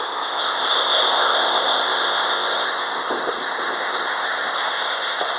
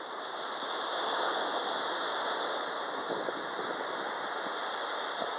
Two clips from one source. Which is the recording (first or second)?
second